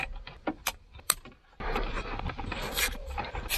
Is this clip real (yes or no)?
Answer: yes